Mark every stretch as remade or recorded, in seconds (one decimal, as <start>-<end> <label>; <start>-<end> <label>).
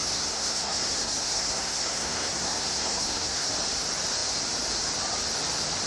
0.0-3.5 remade; 3.5-5.9 recorded